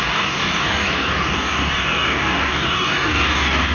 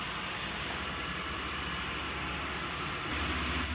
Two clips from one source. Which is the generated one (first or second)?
first